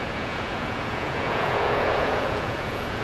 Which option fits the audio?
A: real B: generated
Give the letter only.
B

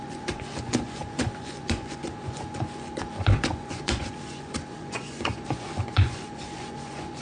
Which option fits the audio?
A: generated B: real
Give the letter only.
A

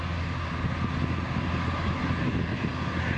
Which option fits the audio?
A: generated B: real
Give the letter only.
B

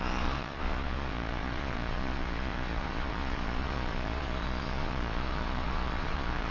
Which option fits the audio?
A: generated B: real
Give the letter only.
A